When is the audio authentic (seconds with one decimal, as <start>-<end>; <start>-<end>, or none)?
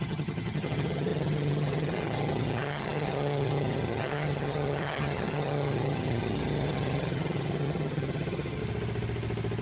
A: 8.6-9.6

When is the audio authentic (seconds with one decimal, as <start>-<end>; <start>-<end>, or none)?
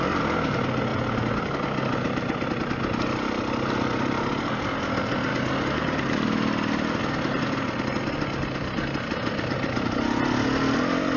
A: 0.0-11.2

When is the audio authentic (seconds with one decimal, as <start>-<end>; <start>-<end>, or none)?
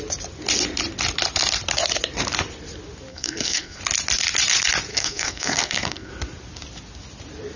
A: 0.0-3.1; 3.8-4.9; 6.1-7.6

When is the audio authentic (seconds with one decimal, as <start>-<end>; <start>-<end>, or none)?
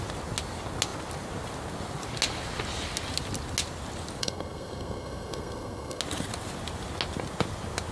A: 0.0-4.2; 6.0-7.9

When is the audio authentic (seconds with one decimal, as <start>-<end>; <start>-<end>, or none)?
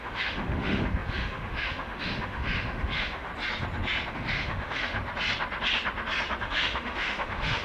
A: 3.3-4.1; 5.0-6.4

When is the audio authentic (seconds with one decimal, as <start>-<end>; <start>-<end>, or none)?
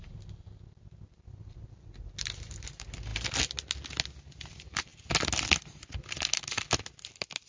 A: 0.0-7.5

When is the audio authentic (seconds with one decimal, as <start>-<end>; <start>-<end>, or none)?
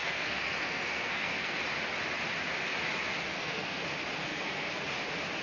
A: 1.6-3.3; 3.8-4.2; 4.8-5.4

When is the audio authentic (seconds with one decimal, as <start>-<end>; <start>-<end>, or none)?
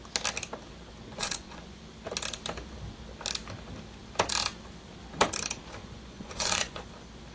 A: 0.0-1.1; 1.8-5.8; 6.8-7.3